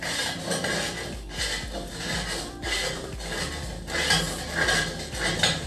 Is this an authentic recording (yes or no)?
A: yes